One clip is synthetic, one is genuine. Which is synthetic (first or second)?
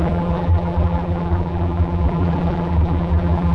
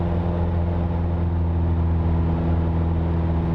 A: first